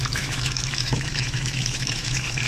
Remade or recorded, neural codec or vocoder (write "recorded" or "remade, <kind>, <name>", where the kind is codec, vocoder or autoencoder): remade, autoencoder, DAC-VAE